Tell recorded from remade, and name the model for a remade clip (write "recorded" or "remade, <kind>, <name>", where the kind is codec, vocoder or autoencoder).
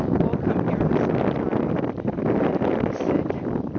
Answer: recorded